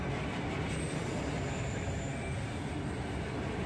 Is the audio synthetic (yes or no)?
no